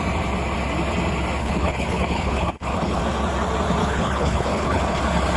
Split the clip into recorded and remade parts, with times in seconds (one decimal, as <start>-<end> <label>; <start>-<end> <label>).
0.0-1.4 recorded; 1.4-3.0 remade; 3.0-3.8 recorded; 3.8-5.0 remade; 5.0-5.4 recorded